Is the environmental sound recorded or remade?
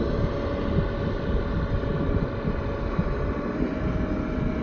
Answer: recorded